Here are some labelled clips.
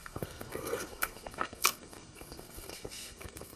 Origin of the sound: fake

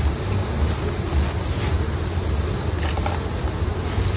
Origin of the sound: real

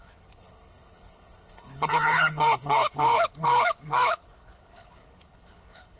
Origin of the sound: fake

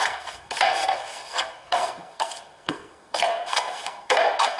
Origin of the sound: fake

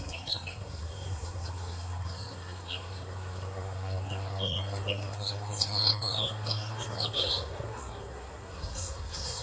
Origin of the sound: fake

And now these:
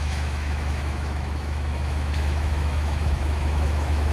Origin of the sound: fake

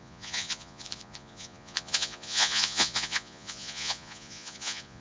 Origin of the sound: fake